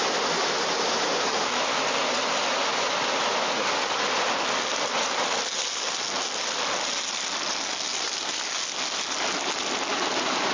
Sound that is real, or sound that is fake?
real